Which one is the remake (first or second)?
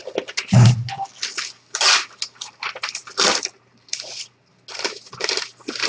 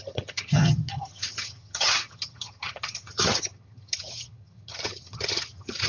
second